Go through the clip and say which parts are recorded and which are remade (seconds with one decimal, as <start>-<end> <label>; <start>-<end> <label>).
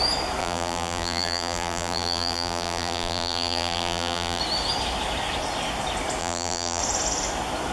0.0-0.4 recorded; 0.4-4.4 remade; 4.4-6.2 recorded; 6.2-6.8 remade; 6.8-7.7 recorded